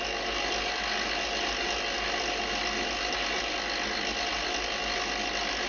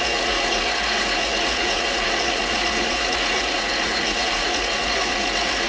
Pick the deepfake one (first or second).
second